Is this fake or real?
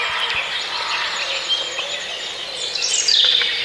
real